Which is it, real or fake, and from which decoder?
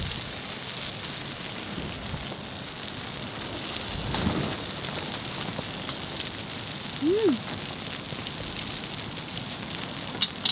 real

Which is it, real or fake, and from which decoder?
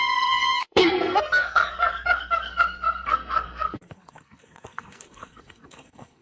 fake, codec, SNAC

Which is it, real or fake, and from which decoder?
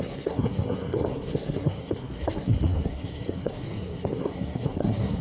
fake, codec, SNAC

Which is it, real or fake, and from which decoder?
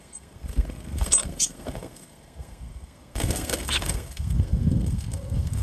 fake, codec, SNAC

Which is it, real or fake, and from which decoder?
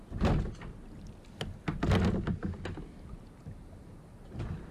real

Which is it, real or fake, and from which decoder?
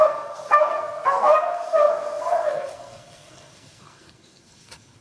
fake, codec, SNAC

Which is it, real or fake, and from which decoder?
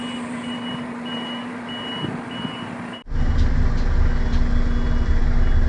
real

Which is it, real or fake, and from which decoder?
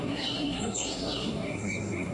fake, codec, SNAC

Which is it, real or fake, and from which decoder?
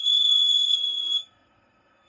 fake, codec, SNAC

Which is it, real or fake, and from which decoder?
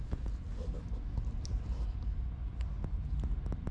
real